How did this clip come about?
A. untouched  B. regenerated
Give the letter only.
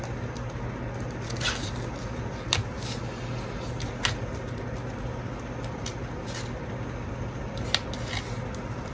A